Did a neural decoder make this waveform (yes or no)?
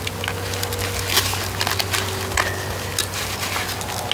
no